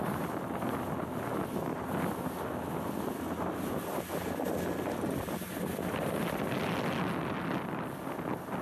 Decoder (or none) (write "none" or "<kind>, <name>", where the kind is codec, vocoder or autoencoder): none